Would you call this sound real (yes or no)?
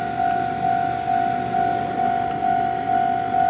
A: yes